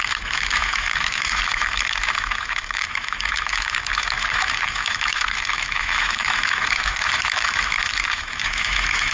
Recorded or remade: remade